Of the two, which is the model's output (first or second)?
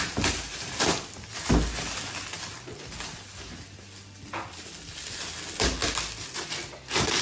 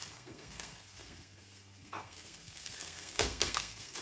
second